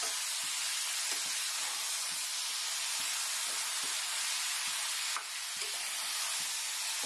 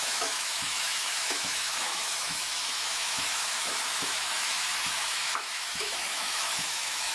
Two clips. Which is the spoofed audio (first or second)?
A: second